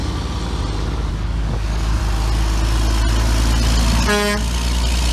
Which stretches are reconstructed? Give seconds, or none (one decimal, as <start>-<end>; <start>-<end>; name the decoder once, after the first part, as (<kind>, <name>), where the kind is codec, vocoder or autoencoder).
1.1-2.0 (codec, DAC)